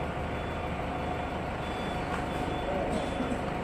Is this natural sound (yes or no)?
no